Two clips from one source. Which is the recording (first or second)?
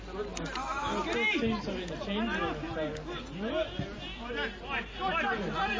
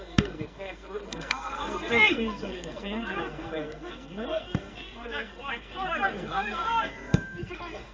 first